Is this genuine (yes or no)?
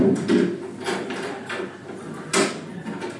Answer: yes